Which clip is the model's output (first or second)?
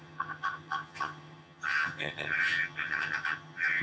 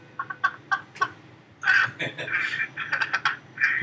first